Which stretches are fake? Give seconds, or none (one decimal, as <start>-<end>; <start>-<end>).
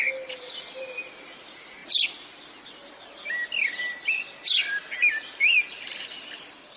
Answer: none